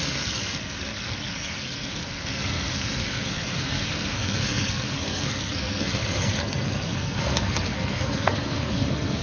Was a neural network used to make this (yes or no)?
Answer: yes